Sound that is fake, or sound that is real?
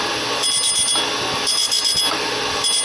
real